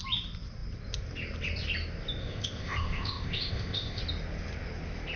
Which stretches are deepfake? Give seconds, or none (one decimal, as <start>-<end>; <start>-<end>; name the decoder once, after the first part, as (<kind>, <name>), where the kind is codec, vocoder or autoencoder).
2.2-4.0 (codec, ZipCodec)